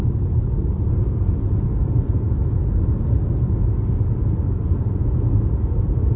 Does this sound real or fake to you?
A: real